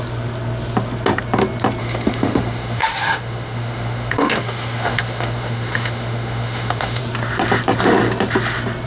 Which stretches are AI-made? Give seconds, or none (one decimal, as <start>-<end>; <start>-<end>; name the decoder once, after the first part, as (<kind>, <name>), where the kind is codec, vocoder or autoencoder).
1.8-7.0 (autoencoder, DAC-VAE)